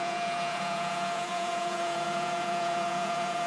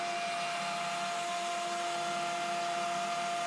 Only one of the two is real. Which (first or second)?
second